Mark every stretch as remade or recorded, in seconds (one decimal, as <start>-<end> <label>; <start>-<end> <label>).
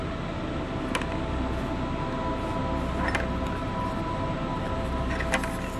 0.0-5.8 recorded